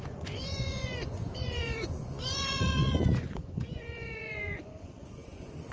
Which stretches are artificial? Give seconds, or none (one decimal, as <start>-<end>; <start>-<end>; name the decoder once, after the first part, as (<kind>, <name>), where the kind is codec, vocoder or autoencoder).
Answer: 0.0-5.7 (vocoder, Vocos)